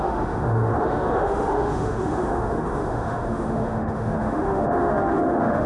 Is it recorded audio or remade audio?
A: remade